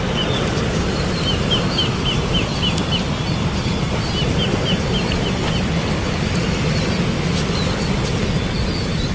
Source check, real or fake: real